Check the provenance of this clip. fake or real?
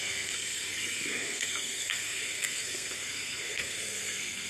fake